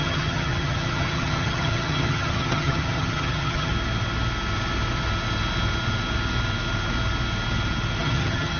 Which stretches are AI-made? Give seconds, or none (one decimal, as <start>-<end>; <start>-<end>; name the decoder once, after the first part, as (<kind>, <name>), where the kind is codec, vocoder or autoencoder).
0.0-3.7 (vocoder, HiFi-GAN); 8.0-8.6